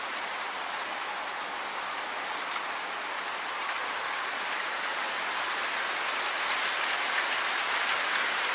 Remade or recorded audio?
recorded